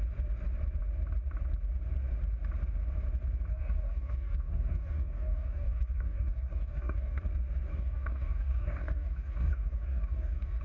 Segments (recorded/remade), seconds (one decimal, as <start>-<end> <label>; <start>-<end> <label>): 0.0-3.5 recorded; 3.5-7.2 remade; 7.2-7.7 recorded; 7.7-10.6 remade